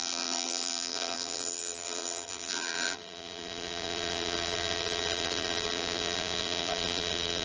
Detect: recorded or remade remade